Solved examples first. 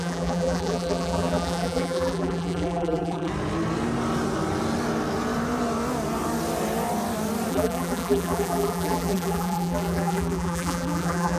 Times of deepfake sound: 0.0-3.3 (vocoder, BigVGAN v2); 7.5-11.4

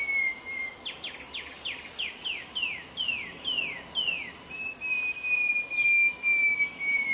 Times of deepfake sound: none

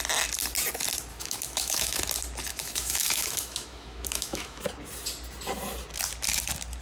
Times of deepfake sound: 1.1-2.0 (autoencoder, DAC-VAE); 2.5-4.6

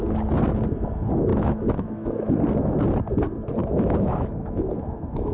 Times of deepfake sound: 1.3-2.3 (autoencoder, DAC-VAE); 3.6-5.3

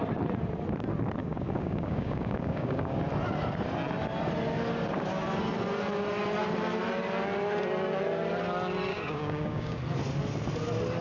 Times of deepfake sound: 1.2-3.0 (codec, DAC); 8.9-9.8

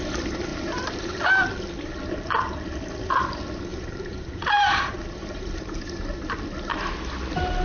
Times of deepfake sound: 0.5-1.2 (vocoder, BigVGAN v2); 3.7-5.8

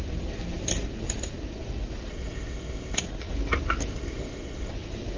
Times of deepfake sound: 2.1-3.0 (codec, ZipCodec); 3.9-4.7